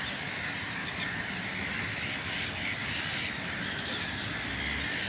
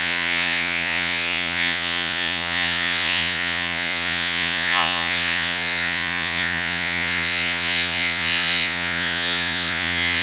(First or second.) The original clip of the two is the first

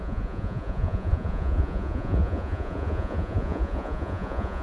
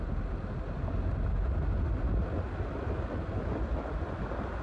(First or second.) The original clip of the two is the second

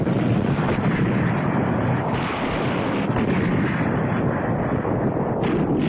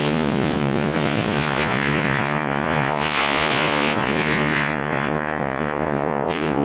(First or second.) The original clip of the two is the first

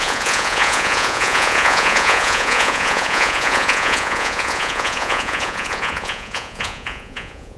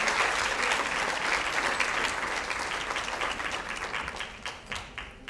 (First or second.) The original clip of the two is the second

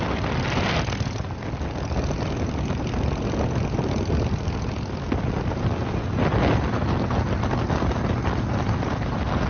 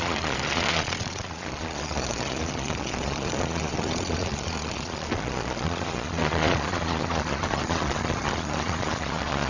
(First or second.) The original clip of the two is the first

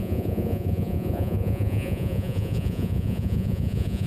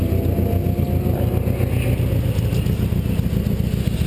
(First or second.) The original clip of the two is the second